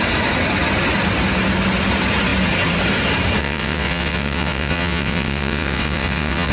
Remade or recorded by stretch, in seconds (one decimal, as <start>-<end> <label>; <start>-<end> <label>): 0.0-3.4 recorded; 3.4-6.5 remade